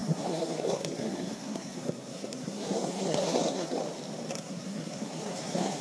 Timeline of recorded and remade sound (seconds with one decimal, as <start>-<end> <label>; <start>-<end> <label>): 0.0-3.8 remade; 3.8-4.3 recorded; 4.3-5.8 remade